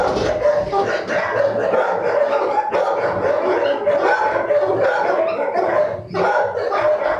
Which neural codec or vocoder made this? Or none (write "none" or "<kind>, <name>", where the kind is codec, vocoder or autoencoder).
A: none